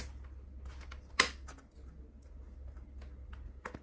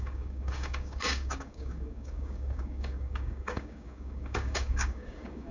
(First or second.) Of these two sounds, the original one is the first